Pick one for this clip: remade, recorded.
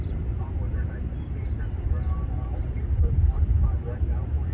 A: remade